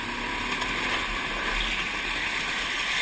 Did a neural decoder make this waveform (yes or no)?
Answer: no